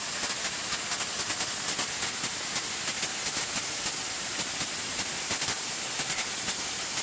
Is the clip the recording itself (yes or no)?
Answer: yes